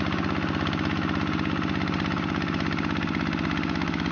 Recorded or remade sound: recorded